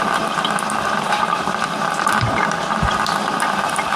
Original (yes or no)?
no